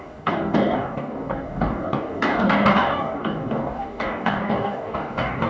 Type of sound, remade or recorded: remade